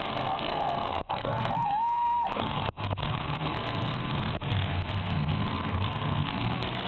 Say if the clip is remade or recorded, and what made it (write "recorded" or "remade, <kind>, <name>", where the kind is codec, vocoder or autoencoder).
remade, codec, SNAC